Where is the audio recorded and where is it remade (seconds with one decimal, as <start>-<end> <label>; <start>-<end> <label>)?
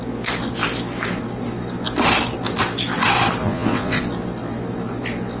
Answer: 0.0-3.4 recorded; 3.4-4.0 remade; 4.0-5.4 recorded